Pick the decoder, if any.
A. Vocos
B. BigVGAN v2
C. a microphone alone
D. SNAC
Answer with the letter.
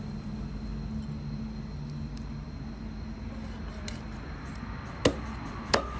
C